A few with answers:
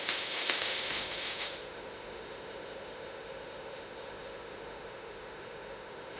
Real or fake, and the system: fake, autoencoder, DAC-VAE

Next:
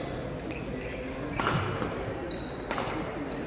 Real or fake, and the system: real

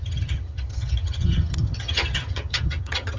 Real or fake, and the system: fake, vocoder, HiFi-GAN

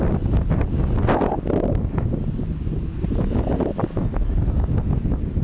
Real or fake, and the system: real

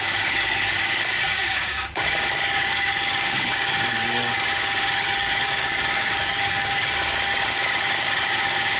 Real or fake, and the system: fake, codec, DAC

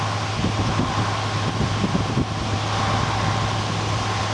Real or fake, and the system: real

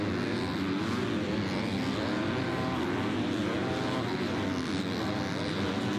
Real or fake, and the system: real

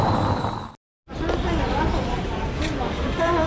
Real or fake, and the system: real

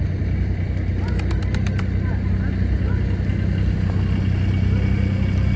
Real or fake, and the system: real